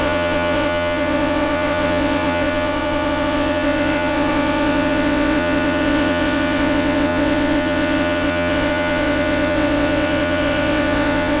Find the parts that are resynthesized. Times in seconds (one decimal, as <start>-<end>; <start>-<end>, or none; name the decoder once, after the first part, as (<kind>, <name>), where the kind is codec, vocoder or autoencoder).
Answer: 0.0-11.4 (vocoder, WaveNeXt)